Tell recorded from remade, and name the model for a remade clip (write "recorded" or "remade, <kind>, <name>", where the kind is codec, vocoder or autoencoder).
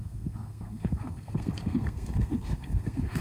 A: remade, codec, SNAC